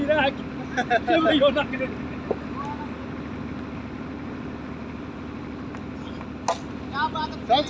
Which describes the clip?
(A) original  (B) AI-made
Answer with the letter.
A